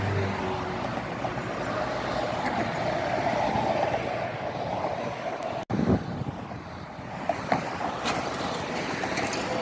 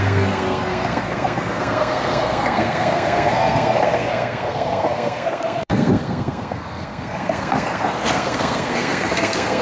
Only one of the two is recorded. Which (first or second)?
first